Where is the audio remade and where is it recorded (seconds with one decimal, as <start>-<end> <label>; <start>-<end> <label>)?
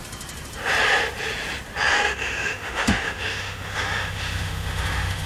0.0-1.9 recorded; 1.9-5.3 remade